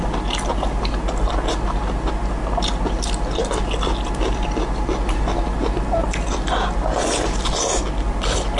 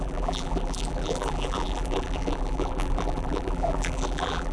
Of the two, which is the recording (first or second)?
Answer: first